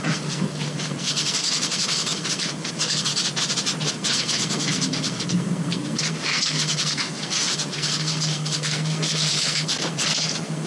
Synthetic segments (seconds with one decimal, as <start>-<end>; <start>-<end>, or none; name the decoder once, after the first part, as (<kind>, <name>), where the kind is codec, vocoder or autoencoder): 0.0-3.1 (codec, SNAC); 3.9-10.7